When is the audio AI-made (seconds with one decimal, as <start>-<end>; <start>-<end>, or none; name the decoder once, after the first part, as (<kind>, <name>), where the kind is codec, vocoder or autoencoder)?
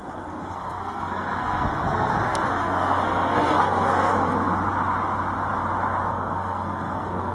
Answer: 0.0-4.3 (codec, SNAC); 6.1-7.3